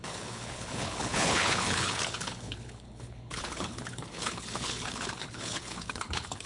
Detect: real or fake fake